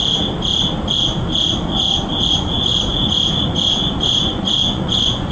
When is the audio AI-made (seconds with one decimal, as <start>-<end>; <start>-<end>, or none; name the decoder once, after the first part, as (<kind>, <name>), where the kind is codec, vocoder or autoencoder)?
2.3-5.3 (vocoder, Vocos)